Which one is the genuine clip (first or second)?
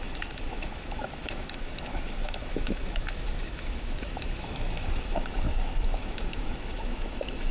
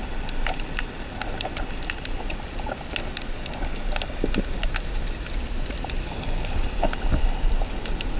second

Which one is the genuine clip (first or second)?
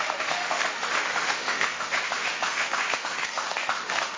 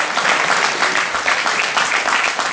second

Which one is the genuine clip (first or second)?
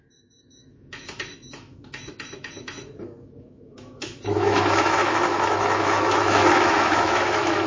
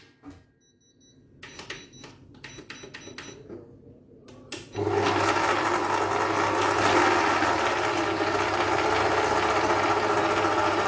second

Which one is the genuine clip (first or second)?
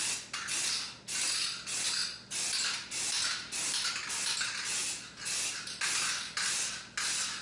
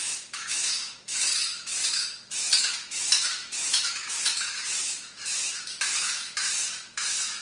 first